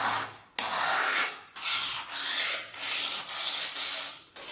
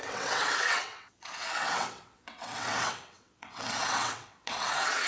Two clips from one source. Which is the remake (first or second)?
second